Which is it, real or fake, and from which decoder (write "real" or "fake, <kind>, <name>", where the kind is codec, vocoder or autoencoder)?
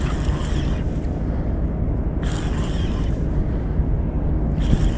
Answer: real